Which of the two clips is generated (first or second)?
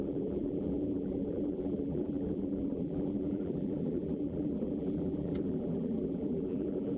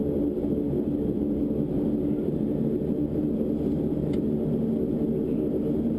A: first